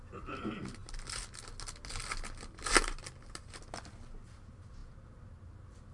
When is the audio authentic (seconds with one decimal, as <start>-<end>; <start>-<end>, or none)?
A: 0.0-5.9